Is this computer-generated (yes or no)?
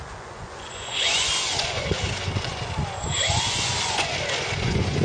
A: yes